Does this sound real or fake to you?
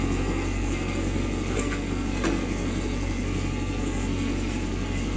fake